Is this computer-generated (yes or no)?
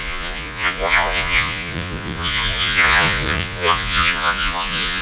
yes